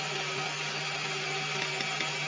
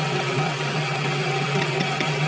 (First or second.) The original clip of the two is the first